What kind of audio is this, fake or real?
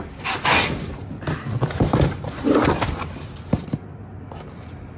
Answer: real